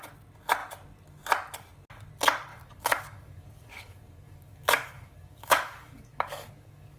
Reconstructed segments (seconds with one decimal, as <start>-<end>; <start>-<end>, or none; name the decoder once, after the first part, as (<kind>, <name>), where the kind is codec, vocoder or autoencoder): 2.5-7.0 (codec, DAC)